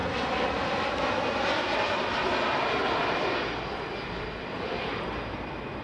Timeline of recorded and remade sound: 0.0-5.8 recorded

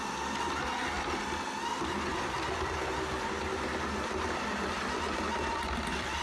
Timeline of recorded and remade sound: 0.0-6.2 recorded